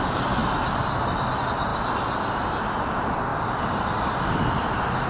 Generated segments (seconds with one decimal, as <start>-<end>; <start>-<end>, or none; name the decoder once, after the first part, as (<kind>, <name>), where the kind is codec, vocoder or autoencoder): none